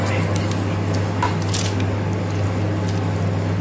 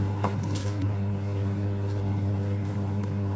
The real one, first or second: first